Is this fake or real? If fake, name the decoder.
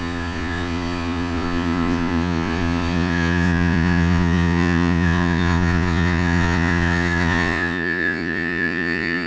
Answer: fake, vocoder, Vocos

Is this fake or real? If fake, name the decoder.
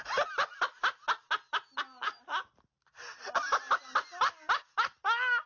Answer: real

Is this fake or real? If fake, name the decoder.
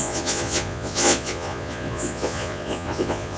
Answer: fake, vocoder, Vocos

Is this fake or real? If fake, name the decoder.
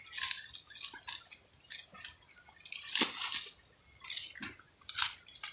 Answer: real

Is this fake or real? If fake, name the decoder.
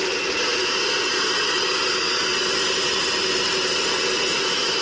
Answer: real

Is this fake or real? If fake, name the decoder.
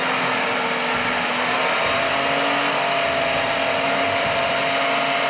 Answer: real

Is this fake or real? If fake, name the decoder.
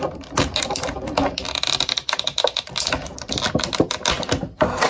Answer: real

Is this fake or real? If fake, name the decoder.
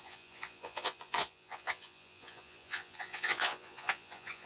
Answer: fake, vocoder, Vocos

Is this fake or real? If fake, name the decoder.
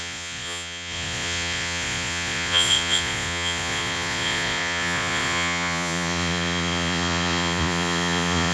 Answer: fake, vocoder, Vocos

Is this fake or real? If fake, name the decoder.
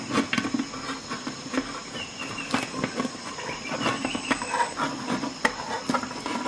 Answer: real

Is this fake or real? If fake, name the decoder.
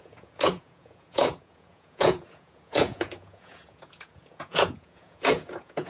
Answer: fake, vocoder, Vocos